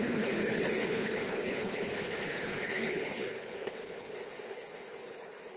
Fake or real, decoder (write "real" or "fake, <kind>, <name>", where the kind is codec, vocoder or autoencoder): fake, codec, HILCodec